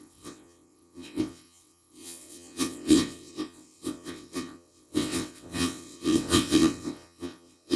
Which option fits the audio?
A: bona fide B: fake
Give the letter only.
B